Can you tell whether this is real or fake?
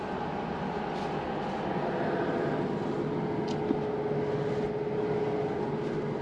real